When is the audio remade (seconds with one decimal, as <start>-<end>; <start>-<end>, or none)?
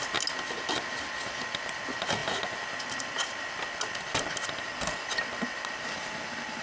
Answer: none